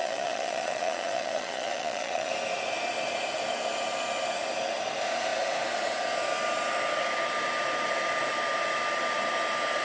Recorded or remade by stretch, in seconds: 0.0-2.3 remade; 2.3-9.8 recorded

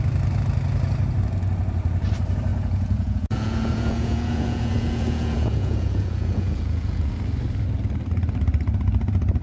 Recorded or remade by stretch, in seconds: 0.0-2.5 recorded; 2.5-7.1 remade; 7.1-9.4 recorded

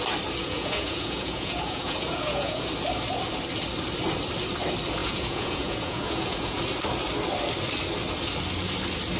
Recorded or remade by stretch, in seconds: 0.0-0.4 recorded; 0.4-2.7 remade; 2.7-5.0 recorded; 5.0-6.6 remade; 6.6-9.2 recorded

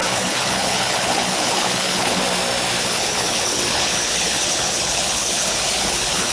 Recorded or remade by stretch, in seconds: 0.0-2.2 remade; 2.2-2.8 recorded; 2.8-6.3 remade

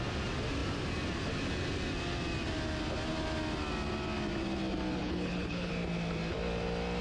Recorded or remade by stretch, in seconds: 0.0-5.0 recorded; 5.0-5.7 remade; 5.7-7.0 recorded